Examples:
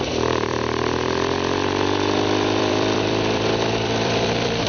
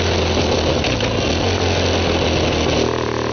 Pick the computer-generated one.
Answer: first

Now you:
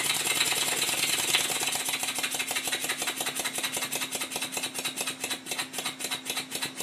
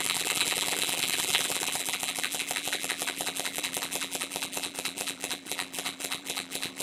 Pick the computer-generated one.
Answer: second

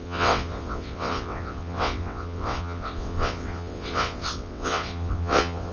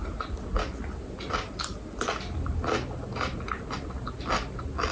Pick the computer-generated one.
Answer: first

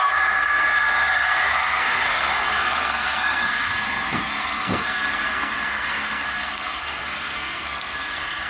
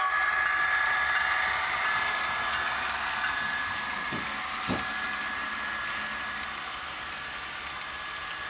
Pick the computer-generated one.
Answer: first